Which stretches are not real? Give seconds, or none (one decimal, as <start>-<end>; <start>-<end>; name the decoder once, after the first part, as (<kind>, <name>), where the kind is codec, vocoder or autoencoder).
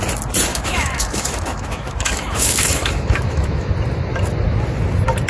0.5-3.7 (autoencoder, DAC-VAE)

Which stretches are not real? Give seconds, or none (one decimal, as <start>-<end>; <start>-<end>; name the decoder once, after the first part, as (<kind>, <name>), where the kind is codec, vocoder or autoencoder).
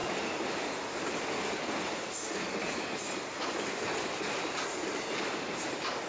none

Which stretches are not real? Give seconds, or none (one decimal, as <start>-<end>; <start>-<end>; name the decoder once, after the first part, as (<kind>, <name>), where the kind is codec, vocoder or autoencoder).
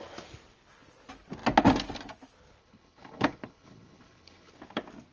2.6-4.5 (codec, HILCodec)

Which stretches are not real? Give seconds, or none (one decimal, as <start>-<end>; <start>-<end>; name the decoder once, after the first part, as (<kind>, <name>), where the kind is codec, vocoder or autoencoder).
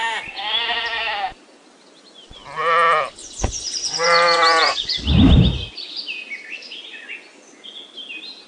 3.2-5.1 (vocoder, Vocos); 6.9-7.8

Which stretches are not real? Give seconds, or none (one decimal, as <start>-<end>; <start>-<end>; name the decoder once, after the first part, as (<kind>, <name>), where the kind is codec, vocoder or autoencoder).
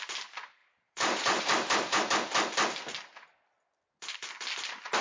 0.6-2.1 (vocoder, BigVGAN v2)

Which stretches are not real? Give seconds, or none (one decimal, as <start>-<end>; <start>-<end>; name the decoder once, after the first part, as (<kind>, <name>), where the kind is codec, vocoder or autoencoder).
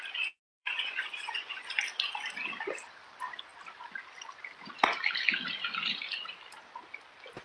0.5-1.8 (vocoder, Vocos)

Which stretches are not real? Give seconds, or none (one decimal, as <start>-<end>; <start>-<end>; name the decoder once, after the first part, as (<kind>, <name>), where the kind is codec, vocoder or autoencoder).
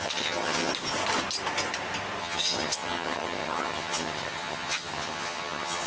0.0-0.7 (vocoder, HiFi-GAN); 2.2-5.9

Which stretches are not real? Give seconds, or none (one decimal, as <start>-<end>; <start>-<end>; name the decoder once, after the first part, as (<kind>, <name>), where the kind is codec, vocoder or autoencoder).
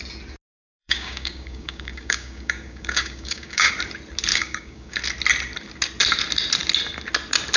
0.8-3.7 (codec, DAC); 4.3-5.0